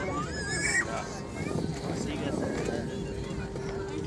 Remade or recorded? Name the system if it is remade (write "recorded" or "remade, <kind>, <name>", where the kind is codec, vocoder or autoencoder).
recorded